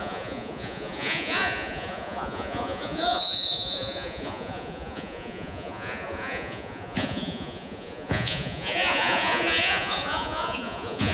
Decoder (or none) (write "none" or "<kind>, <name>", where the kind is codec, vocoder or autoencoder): vocoder, Vocos